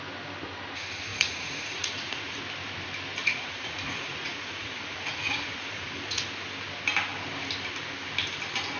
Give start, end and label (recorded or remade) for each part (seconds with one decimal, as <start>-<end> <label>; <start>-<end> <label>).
0.0-1.1 recorded; 1.1-2.4 remade; 2.4-3.2 recorded; 3.2-6.2 remade; 6.2-8.8 recorded